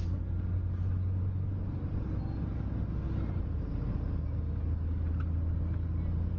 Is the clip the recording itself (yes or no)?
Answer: yes